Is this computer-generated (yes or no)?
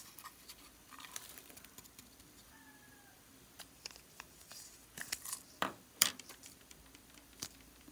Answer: yes